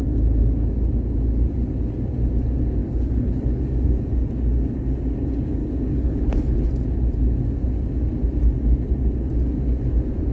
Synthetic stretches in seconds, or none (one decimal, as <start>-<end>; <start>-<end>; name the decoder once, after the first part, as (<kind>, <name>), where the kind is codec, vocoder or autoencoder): 2.8-3.6 (codec, HILCodec); 5.9-6.7